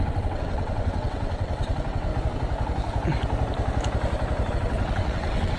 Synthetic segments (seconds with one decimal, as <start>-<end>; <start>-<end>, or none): 0.0-2.1; 4.5-5.6